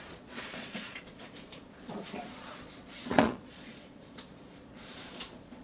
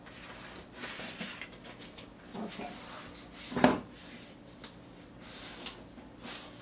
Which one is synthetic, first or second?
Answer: first